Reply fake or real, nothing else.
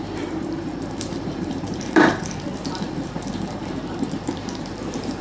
fake